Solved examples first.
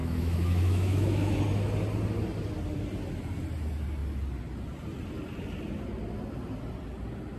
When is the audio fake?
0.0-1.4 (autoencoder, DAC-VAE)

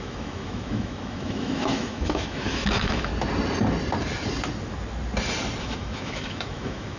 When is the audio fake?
0.0-3.1 (autoencoder, DAC-VAE); 5.6-7.0